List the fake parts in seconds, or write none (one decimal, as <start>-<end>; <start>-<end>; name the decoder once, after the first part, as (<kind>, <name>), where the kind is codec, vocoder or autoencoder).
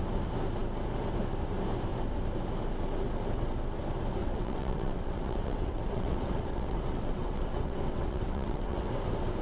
4.2-8.9 (vocoder, WaveNeXt)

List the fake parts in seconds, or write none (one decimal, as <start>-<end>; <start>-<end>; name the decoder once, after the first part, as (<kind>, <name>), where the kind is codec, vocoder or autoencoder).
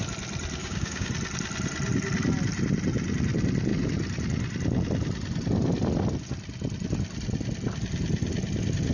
0.6-1.1 (codec, DAC)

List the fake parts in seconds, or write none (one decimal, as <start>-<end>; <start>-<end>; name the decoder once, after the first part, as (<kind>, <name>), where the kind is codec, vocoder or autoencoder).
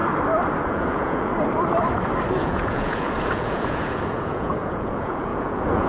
0.7-1.3 (vocoder, Vocos); 2.3-5.9